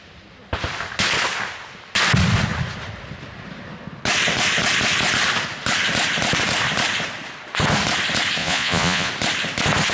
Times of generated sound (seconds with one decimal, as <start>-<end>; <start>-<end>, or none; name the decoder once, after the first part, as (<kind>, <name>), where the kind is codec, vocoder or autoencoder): 8.4-9.1 (vocoder, Vocos)